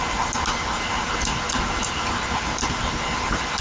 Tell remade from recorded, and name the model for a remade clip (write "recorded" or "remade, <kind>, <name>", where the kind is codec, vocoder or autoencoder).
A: recorded